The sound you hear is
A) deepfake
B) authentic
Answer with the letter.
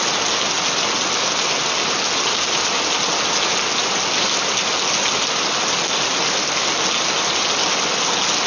B